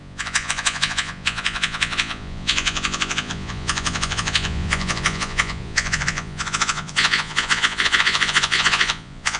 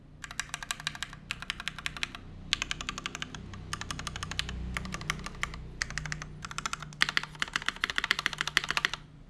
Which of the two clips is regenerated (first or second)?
first